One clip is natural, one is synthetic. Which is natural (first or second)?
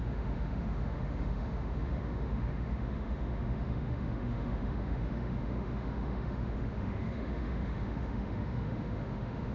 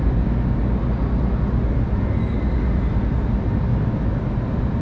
second